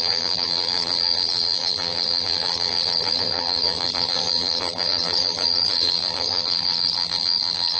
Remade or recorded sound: remade